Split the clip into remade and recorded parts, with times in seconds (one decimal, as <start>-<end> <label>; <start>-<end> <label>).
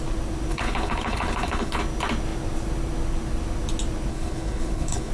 0.0-0.5 recorded; 0.5-1.8 remade; 1.8-4.1 recorded; 4.1-5.1 remade